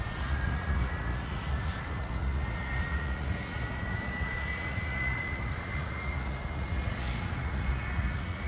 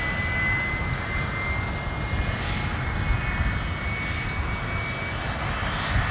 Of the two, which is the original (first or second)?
second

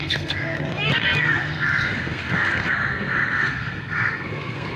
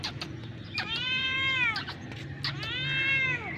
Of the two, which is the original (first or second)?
second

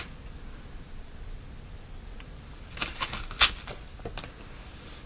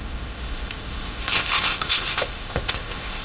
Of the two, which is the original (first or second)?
first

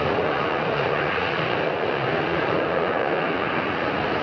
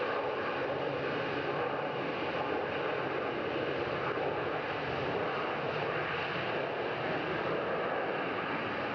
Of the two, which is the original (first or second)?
second